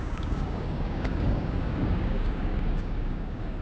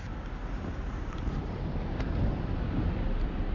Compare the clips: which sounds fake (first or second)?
first